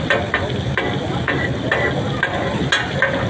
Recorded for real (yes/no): yes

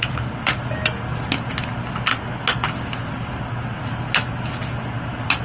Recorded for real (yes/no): yes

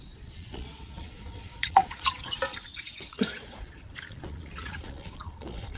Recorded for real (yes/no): no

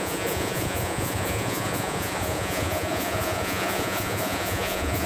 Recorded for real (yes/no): no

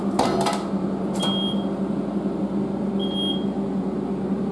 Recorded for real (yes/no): yes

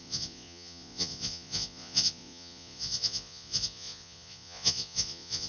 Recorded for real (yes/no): no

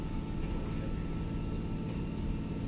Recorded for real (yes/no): yes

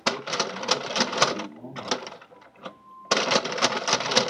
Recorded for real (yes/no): yes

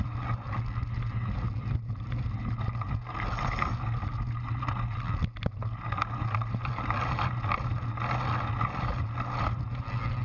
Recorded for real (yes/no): yes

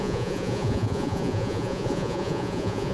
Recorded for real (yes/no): no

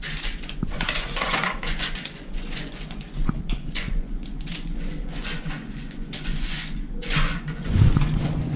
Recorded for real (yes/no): no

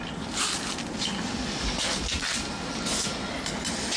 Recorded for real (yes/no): yes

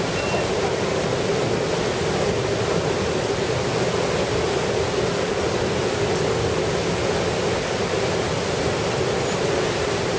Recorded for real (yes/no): yes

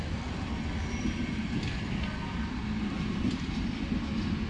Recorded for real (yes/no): yes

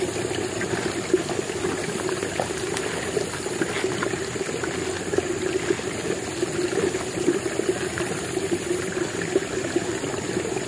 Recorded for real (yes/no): yes